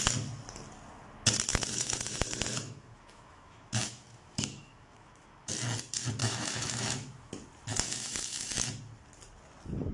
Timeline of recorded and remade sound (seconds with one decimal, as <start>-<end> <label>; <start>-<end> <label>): 0.0-1.5 recorded; 1.5-5.5 remade; 5.5-6.2 recorded; 6.2-7.3 remade; 7.3-7.7 recorded; 7.7-8.5 remade; 8.5-9.9 recorded